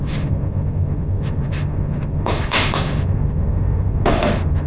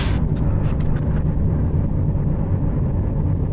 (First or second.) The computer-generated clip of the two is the first